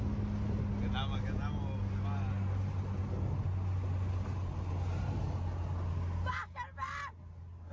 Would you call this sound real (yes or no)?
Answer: yes